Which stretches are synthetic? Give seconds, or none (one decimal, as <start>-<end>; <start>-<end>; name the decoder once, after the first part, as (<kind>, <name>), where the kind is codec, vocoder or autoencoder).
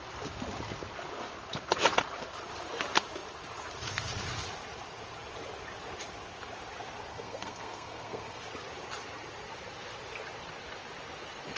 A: 7.1-8.4 (codec, SNAC)